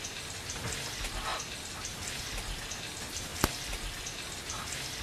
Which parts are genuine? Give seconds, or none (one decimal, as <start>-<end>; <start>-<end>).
0.0-5.0

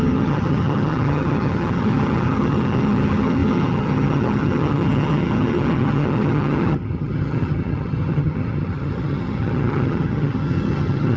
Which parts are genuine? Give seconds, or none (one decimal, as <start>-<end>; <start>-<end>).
none

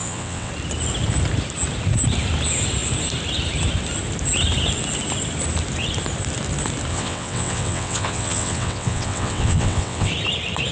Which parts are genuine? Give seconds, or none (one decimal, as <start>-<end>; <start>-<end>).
0.5-6.9; 10.1-10.7